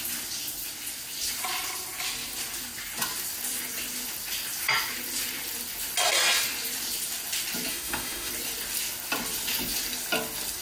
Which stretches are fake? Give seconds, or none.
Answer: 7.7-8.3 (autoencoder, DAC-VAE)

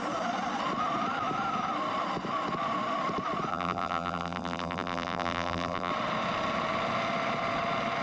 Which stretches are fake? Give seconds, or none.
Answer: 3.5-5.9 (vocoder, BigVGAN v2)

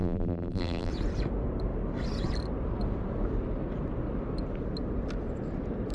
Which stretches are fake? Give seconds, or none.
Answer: 0.0-0.9 (vocoder, BigVGAN v2)

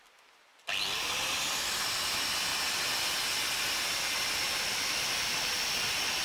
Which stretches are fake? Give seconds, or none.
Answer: none

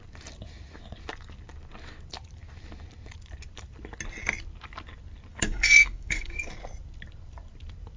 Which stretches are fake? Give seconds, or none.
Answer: 5.3-6.5 (codec, DAC)